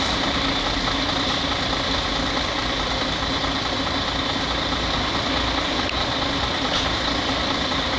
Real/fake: fake